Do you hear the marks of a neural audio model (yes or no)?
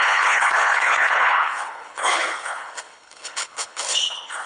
yes